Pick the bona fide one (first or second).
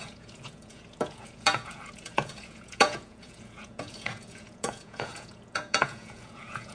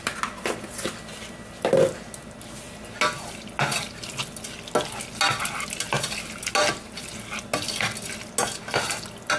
second